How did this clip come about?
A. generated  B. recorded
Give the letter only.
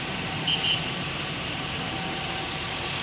A